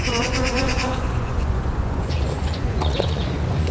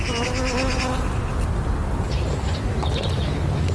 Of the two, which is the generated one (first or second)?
first